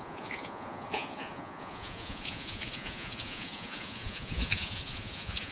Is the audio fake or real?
fake